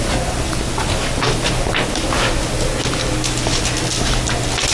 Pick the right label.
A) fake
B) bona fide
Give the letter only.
B